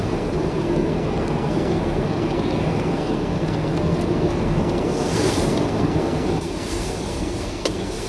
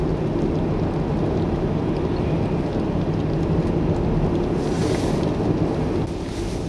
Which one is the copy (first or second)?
first